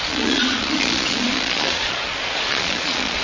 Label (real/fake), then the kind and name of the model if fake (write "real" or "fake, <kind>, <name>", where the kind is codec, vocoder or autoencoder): fake, vocoder, Vocos